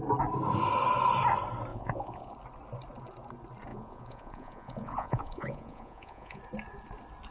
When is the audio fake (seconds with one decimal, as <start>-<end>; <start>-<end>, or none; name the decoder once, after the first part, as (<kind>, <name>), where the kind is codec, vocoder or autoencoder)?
1.7-2.3 (vocoder, Vocos); 3.7-6.4